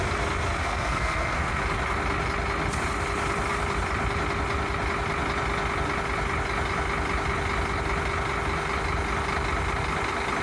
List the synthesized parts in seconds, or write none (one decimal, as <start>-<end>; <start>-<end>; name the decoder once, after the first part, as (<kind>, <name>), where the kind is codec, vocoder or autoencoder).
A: 0.6-1.6 (codec, SNAC)